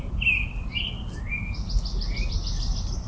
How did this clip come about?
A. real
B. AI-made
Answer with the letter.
A